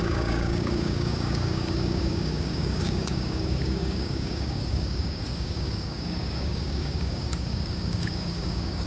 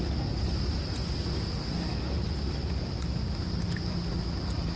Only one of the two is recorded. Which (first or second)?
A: second